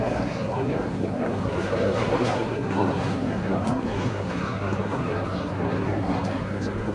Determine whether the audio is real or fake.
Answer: fake